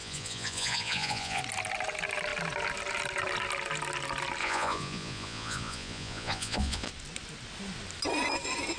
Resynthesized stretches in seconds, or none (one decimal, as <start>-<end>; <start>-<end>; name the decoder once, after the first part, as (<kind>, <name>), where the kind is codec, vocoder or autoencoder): 0.0-1.4 (vocoder, Vocos); 4.4-6.9